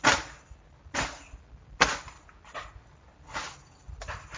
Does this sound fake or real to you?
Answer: real